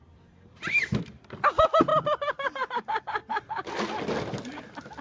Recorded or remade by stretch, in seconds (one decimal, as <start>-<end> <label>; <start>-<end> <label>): 0.0-5.0 recorded